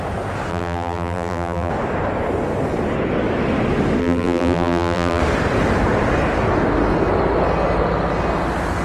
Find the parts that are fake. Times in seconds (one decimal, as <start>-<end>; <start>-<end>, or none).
0.5-1.7; 4.0-5.2